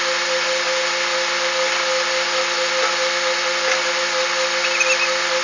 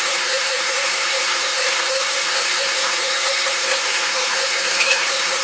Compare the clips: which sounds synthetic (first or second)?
second